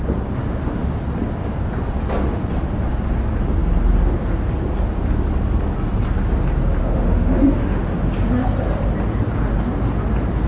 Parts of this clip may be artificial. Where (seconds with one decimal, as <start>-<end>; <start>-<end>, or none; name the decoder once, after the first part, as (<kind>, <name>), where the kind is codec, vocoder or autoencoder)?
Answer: 0.4-1.0 (autoencoder, DAC-VAE); 6.8-8.1